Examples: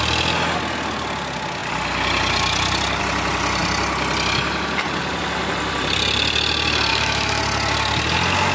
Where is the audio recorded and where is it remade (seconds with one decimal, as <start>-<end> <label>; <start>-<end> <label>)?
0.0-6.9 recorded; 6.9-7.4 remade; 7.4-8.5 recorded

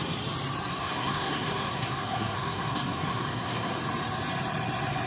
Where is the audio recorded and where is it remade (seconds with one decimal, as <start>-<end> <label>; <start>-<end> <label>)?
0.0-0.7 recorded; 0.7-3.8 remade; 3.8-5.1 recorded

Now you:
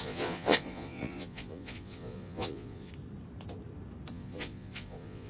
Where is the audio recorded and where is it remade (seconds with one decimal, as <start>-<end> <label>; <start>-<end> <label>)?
0.0-2.9 remade; 2.9-4.1 recorded; 4.1-5.3 remade

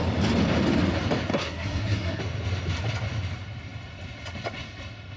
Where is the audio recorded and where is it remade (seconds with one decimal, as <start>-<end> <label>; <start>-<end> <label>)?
0.0-1.3 recorded; 1.3-2.2 remade; 2.2-5.2 recorded